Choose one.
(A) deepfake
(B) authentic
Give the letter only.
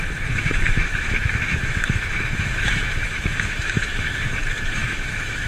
A